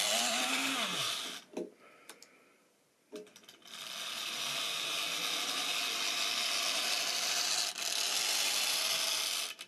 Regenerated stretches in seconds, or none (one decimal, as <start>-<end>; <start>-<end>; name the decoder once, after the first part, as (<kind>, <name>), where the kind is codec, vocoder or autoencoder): none